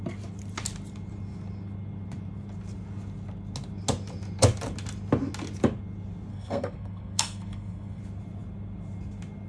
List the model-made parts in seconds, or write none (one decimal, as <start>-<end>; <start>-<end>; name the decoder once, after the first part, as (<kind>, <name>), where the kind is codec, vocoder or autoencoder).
6.3-8.0 (codec, SNAC)

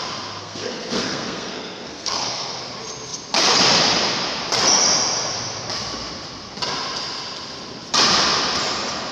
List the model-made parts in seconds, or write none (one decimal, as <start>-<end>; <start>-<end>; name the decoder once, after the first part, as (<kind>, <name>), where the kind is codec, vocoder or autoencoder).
0.4-2.6 (codec, SNAC)

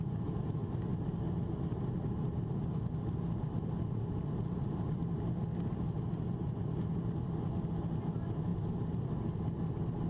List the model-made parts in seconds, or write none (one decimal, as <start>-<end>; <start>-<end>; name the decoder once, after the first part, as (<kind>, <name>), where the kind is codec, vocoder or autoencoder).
none

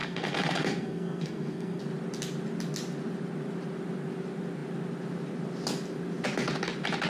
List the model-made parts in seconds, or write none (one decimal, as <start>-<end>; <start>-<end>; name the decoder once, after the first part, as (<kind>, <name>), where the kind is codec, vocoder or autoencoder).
0.0-1.8 (codec, SNAC)

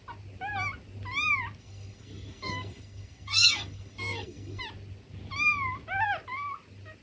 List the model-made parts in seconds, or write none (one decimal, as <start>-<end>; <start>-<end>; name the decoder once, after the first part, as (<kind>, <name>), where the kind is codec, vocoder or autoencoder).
1.6-4.6 (codec, SNAC)

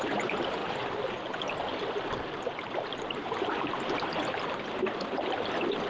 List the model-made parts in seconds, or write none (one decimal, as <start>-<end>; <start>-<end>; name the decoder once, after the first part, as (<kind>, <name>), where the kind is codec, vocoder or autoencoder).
none